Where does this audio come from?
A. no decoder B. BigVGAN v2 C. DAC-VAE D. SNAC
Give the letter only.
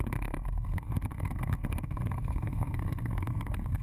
D